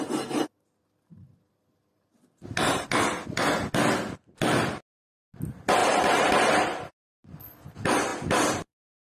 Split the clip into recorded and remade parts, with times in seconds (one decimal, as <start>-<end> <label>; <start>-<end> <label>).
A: 0.0-5.8 recorded; 5.8-6.3 remade; 6.3-9.1 recorded